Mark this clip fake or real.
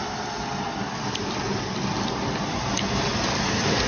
real